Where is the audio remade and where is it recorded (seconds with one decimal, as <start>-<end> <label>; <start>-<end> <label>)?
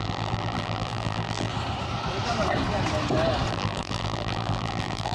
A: 0.0-1.5 remade; 1.5-3.5 recorded; 3.5-5.1 remade